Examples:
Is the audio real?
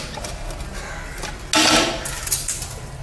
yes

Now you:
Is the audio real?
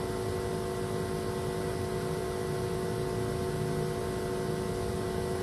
yes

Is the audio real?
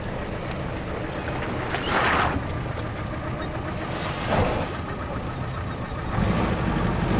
yes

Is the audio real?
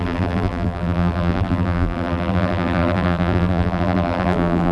no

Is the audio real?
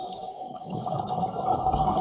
no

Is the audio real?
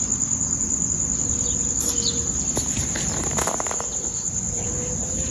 yes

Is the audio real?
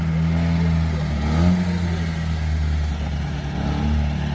yes